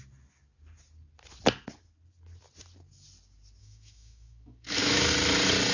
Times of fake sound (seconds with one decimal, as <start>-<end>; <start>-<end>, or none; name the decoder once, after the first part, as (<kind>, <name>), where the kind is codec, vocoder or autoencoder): 3.6-5.1 (autoencoder, DAC-VAE)